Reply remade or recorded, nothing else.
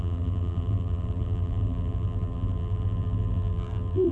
remade